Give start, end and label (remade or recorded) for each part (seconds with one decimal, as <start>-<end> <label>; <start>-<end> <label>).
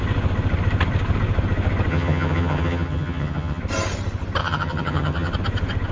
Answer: 0.0-1.9 recorded; 1.9-3.6 remade; 3.6-4.4 recorded; 4.4-5.3 remade; 5.3-5.9 recorded